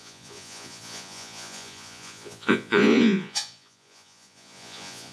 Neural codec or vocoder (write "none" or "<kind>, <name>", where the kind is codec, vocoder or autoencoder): vocoder, Vocos